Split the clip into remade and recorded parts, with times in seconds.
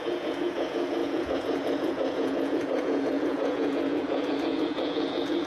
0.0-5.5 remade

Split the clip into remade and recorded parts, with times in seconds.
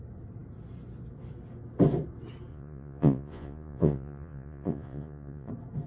0.0-2.5 recorded; 2.5-5.5 remade; 5.5-5.9 recorded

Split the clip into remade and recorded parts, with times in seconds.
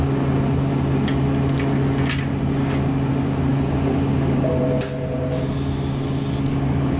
0.0-3.5 recorded; 3.5-4.5 remade; 4.5-7.0 recorded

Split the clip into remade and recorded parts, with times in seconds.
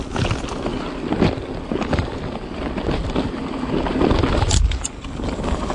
0.0-5.7 recorded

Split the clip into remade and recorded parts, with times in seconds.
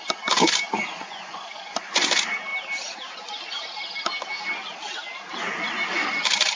0.0-0.8 recorded; 0.8-2.1 remade; 2.1-6.6 recorded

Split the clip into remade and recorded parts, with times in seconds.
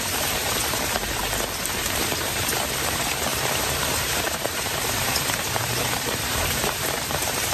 0.0-1.2 remade; 1.2-1.8 recorded; 1.8-7.5 remade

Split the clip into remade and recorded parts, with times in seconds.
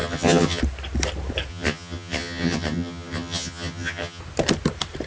0.0-0.6 remade; 0.6-1.5 recorded; 1.5-4.2 remade; 4.2-5.1 recorded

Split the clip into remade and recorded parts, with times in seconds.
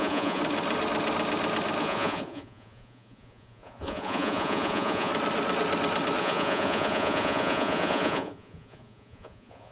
0.0-0.4 remade; 0.4-1.8 recorded; 1.8-5.1 remade; 5.1-6.2 recorded; 6.2-9.7 remade